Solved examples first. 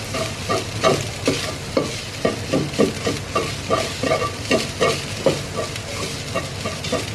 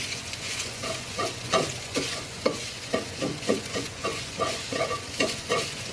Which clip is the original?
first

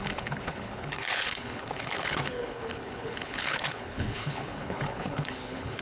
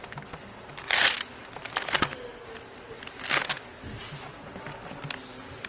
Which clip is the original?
second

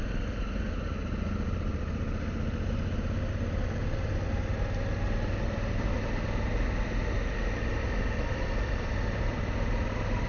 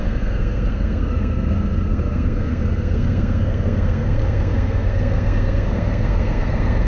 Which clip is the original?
first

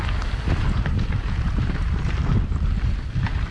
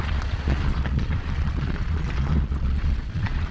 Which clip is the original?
first